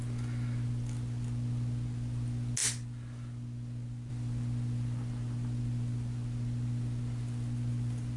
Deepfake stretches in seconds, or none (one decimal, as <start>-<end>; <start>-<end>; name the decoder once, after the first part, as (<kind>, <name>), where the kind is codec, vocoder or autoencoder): none